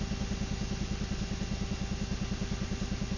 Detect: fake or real real